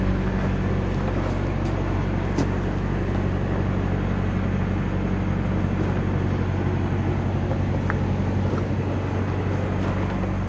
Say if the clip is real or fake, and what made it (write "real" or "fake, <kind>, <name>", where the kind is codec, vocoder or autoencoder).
real